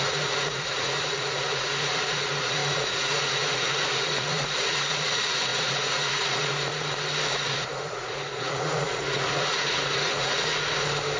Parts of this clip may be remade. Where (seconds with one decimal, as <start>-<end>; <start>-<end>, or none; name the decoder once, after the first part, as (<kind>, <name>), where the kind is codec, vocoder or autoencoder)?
0.0-6.7 (vocoder, Vocos); 7.3-10.5